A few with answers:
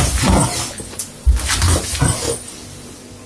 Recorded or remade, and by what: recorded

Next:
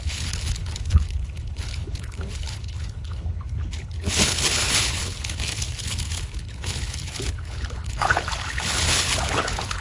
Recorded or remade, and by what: remade, codec, HILCodec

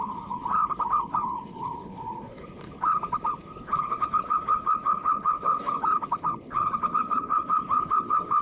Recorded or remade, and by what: remade, codec, HILCodec